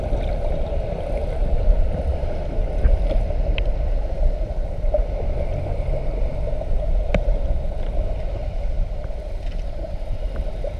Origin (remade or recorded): recorded